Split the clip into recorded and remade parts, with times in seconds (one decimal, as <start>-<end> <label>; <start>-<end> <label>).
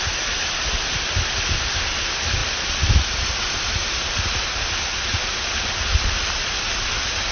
0.0-7.3 recorded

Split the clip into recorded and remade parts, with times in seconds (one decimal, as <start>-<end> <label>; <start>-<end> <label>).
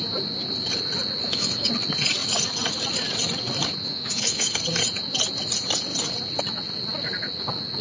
0.0-1.2 recorded; 1.2-1.7 remade; 1.7-3.9 recorded; 3.9-4.6 remade; 4.6-7.8 recorded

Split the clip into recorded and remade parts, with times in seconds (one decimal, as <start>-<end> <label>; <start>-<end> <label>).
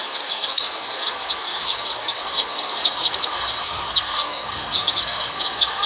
0.0-5.9 remade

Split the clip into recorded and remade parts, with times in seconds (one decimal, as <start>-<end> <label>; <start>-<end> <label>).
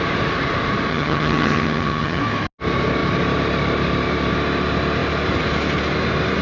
0.0-0.9 recorded; 0.9-2.2 remade; 2.2-6.4 recorded